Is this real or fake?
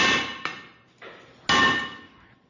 real